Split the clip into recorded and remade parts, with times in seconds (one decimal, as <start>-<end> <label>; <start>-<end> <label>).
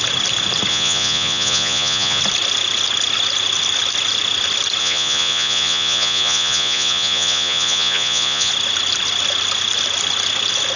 0.0-0.7 recorded; 0.7-2.2 remade; 2.2-4.8 recorded; 4.8-8.5 remade; 8.5-10.8 recorded